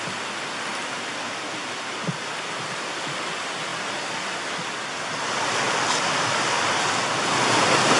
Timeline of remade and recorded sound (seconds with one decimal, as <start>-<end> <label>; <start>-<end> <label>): 0.0-8.0 recorded